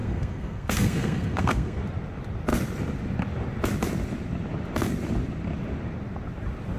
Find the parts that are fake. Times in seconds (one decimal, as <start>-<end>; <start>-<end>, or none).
0.0-1.8